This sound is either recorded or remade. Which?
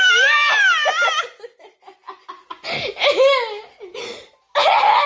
recorded